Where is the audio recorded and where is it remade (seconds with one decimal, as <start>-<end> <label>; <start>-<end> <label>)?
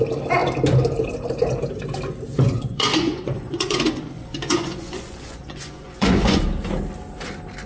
0.0-2.3 recorded; 2.3-6.4 remade; 6.4-7.7 recorded